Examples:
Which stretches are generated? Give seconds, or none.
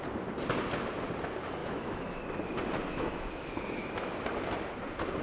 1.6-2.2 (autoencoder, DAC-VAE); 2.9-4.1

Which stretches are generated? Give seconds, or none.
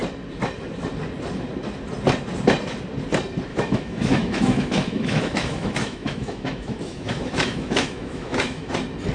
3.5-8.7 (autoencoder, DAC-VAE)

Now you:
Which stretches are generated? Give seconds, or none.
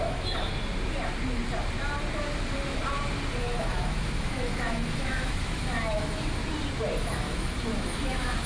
0.0-0.5 (autoencoder, DAC-VAE); 3.4-6.4; 7.0-8.5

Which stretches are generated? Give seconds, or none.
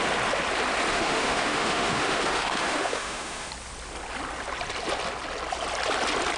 0.9-3.5 (autoencoder, DAC-VAE)